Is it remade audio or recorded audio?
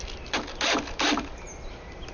recorded